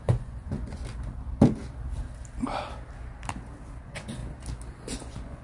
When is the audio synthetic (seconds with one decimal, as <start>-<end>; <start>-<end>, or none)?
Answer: 0.0-0.8; 3.8-4.2; 4.7-5.4